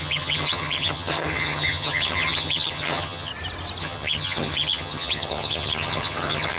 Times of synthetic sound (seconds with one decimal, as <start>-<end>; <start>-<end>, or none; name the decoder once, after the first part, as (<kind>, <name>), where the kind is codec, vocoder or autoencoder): 0.0-3.3 (vocoder, HiFi-GAN); 3.8-6.6